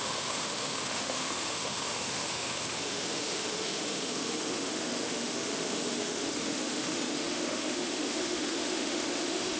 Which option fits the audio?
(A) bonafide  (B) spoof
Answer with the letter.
B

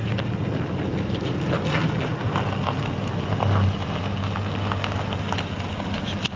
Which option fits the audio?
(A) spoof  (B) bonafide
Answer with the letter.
B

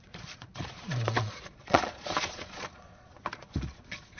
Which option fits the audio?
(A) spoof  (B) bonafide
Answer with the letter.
A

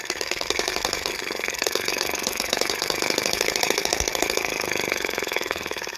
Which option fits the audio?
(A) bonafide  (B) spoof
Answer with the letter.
B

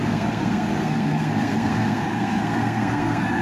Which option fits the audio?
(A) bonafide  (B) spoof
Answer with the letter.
B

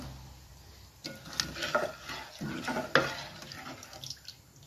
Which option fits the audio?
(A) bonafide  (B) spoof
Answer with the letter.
A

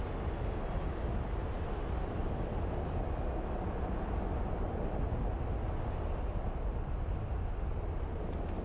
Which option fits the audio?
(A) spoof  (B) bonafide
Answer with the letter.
B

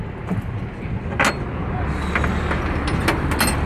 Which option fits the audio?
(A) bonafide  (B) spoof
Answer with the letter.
A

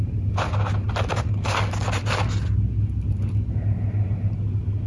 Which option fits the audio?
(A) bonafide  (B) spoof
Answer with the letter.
A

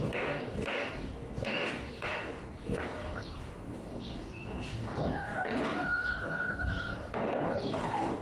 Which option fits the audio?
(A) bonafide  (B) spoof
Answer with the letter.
B